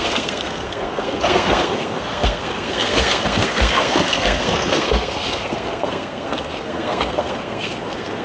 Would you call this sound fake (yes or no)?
yes